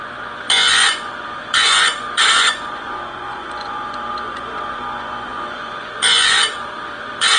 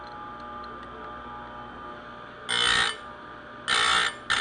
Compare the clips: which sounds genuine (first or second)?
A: second